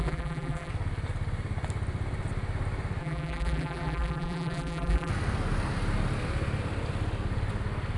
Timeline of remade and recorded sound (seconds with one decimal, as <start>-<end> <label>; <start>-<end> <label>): 0.0-0.7 remade; 0.7-3.0 recorded; 3.0-5.1 remade; 5.1-8.0 recorded